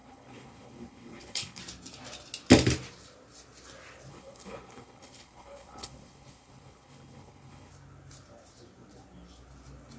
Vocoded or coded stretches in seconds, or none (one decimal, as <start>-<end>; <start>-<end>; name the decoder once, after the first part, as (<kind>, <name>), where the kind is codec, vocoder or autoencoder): 0.0-1.6 (codec, HILCodec); 4.1-7.7